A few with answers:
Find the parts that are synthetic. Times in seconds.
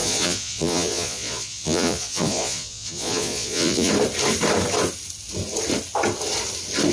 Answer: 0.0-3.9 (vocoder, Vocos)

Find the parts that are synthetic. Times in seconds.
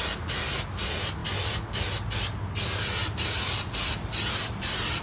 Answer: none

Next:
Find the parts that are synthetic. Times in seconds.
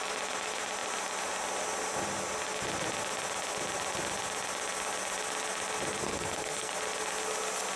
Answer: 6.0-6.7 (codec, SNAC)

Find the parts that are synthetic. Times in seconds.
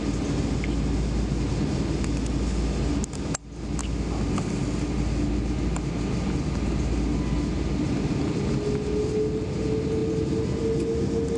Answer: none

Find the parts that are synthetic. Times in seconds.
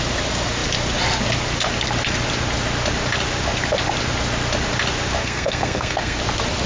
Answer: 5.2-6.2 (codec, SNAC)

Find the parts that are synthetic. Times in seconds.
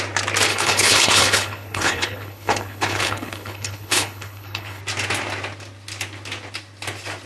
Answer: 0.5-4.8 (codec, HILCodec)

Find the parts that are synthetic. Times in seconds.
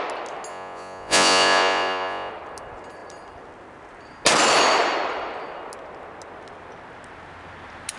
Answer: 0.5-2.3 (vocoder, Vocos)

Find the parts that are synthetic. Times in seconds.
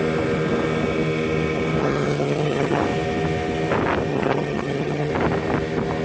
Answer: 1.8-2.8 (vocoder, HiFi-GAN); 4.1-5.1